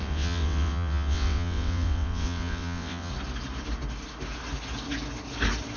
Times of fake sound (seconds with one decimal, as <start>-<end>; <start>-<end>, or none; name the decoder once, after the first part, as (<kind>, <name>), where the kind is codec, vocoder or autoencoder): 0.0-3.1 (vocoder, WaveNeXt)